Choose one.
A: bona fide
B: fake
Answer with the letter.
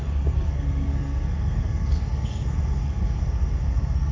B